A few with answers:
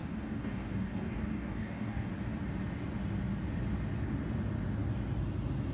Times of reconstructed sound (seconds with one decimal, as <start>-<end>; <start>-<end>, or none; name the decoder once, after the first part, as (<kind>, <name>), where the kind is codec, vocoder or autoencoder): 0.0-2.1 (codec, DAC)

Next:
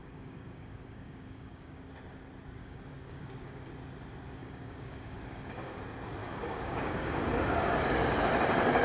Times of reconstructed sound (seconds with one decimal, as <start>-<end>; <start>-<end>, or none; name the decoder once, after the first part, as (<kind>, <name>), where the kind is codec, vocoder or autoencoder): 0.0-1.9 (codec, DAC); 2.6-3.7; 4.4-5.8; 6.2-7.2

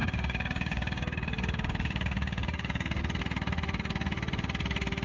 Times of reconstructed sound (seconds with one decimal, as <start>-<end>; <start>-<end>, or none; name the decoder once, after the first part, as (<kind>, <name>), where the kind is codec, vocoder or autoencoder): 0.0-3.0 (codec, DAC)

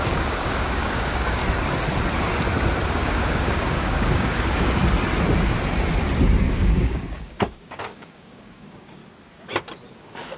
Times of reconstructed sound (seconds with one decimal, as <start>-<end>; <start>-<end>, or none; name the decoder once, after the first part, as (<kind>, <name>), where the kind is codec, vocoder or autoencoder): 0.0-1.4 (codec, DAC); 2.9-4.8; 6.4-9.0; 10.0-10.4

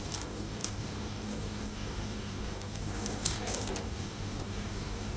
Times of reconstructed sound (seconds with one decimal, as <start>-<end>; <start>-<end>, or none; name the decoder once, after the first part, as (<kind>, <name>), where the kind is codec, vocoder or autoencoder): 0.0-5.2 (codec, DAC)

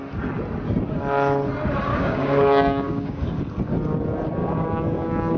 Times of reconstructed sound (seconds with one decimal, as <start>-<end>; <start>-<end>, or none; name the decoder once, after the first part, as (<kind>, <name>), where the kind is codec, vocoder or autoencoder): 1.9-3.3 (codec, DAC); 4.4-5.4